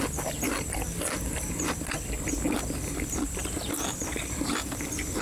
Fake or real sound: fake